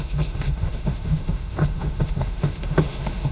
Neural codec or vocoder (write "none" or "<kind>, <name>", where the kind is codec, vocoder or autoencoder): autoencoder, DAC-VAE